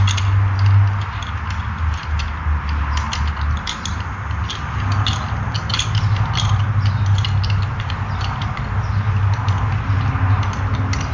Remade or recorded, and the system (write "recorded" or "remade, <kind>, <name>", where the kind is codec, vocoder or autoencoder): recorded